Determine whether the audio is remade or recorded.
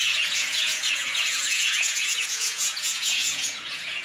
remade